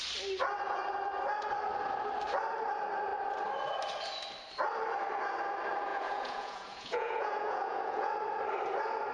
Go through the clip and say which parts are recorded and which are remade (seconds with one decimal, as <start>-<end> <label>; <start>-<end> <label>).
0.0-5.9 recorded; 5.9-8.1 remade; 8.1-9.1 recorded